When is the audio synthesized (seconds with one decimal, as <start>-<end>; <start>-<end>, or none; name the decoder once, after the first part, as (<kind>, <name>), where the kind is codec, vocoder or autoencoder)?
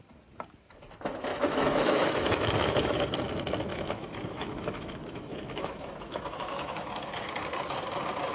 1.3-3.0 (autoencoder, DAC-VAE); 3.7-7.1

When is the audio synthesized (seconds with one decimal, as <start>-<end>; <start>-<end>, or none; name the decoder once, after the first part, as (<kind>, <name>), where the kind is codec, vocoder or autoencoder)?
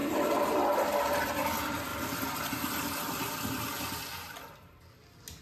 0.0-1.3 (vocoder, BigVGAN v2); 1.9-4.8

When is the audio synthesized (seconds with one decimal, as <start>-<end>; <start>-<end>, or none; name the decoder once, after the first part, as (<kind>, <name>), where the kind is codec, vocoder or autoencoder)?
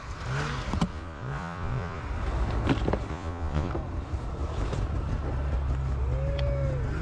0.9-2.0 (vocoder, Vocos); 3.1-3.7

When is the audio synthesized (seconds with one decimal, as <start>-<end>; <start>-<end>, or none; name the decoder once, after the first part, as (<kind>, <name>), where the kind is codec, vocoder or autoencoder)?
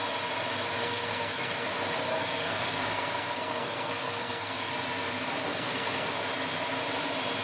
0.8-1.7 (codec, SNAC); 2.1-4.7; 5.5-6.2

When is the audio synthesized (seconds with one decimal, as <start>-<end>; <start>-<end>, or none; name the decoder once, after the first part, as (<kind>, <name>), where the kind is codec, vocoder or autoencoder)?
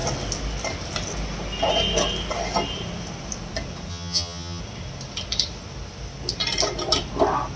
3.9-4.6 (vocoder, HiFi-GAN)